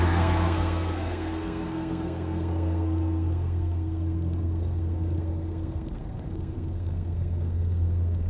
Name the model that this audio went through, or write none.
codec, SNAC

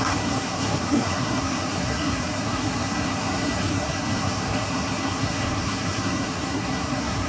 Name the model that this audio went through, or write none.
codec, SNAC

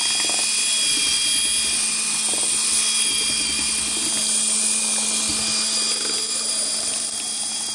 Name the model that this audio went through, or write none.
none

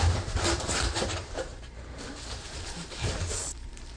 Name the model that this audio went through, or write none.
vocoder, BigVGAN v2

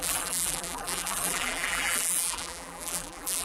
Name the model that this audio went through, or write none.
vocoder, BigVGAN v2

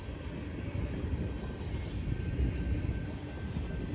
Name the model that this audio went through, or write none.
none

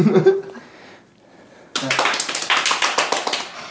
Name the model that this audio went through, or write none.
none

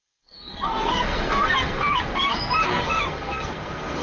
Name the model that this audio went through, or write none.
codec, SNAC